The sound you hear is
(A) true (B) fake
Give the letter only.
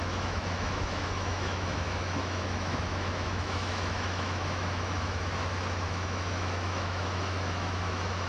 B